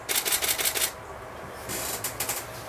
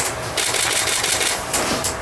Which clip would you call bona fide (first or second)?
first